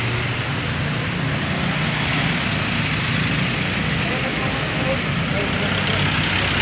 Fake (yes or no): no